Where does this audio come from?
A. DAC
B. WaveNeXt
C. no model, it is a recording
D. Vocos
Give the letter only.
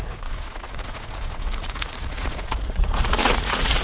D